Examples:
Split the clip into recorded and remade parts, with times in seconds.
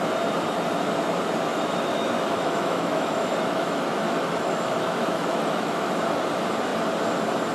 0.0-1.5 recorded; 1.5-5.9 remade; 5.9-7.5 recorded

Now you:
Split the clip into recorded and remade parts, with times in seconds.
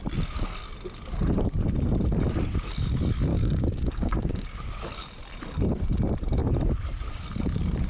0.0-3.3 recorded; 3.3-4.7 remade; 4.7-7.9 recorded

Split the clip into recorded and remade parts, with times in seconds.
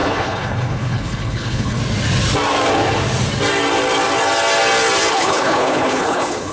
0.0-1.8 remade; 1.8-5.1 recorded; 5.1-6.5 remade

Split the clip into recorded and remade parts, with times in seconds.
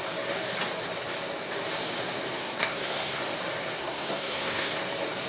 0.0-2.3 recorded; 2.3-3.2 remade; 3.2-3.8 recorded; 3.8-4.7 remade; 4.7-5.3 recorded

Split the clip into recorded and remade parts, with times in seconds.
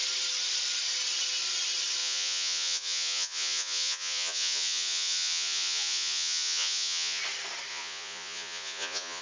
0.0-2.0 recorded; 2.0-7.2 remade; 7.2-7.7 recorded; 7.7-9.2 remade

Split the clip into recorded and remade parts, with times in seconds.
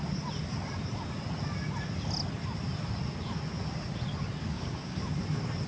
0.0-4.4 recorded; 4.4-5.0 remade; 5.0-5.7 recorded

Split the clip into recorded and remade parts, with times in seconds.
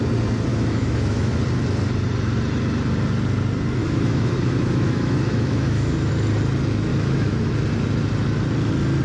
0.0-0.5 recorded; 0.5-1.4 remade; 1.4-3.8 recorded; 3.8-6.1 remade; 6.1-6.9 recorded; 6.9-7.5 remade; 7.5-9.0 recorded